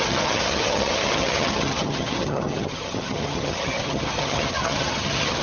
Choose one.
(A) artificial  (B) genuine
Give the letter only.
A